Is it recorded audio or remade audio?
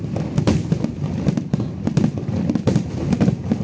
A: recorded